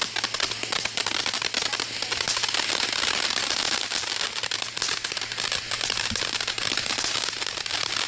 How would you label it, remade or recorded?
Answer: recorded